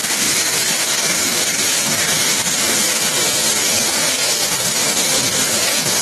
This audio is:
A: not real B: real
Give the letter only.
A